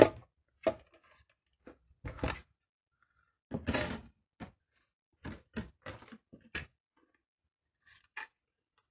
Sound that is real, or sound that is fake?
real